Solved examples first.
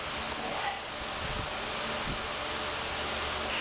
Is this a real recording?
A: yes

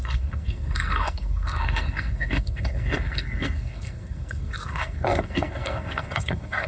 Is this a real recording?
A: no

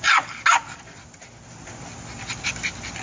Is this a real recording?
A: yes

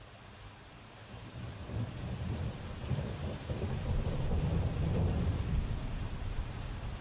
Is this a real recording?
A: yes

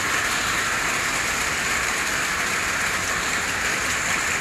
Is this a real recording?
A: yes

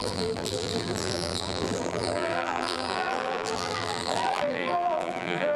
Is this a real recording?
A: no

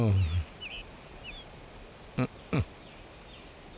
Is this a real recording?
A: yes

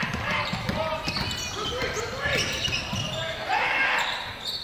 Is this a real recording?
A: yes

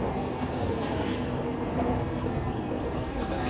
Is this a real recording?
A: no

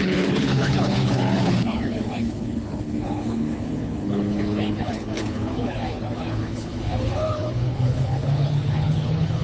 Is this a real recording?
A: no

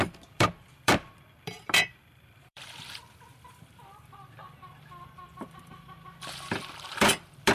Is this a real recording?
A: no